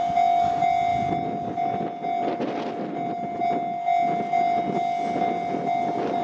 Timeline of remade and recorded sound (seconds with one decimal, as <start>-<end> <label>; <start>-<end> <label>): 0.0-6.2 recorded